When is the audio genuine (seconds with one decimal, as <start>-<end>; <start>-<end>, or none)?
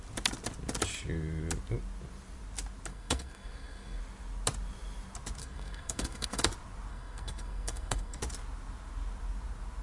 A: 0.0-2.9; 4.0-5.4; 6.4-6.9; 8.2-9.8